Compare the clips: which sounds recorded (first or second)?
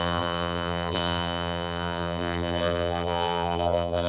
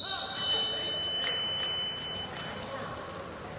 second